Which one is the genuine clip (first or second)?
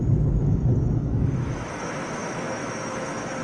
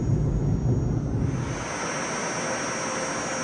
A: second